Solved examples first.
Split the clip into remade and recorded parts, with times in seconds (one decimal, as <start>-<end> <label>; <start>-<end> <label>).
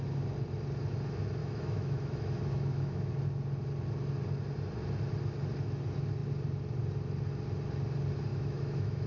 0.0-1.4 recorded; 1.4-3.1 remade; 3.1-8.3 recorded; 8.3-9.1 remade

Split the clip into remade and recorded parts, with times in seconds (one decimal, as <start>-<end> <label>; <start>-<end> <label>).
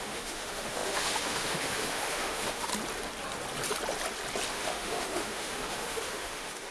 0.0-2.7 remade; 2.7-4.5 recorded; 4.5-6.7 remade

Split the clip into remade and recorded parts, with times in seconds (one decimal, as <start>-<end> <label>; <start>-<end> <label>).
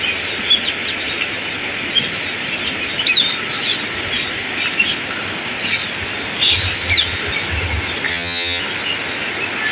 0.0-8.1 recorded; 8.1-8.6 remade; 8.6-9.7 recorded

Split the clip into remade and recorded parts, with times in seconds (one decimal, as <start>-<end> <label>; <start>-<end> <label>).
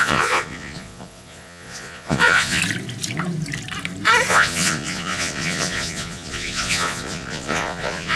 0.0-2.6 remade; 2.6-4.3 recorded; 4.3-8.2 remade